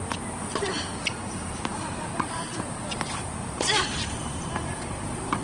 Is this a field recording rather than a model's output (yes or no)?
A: no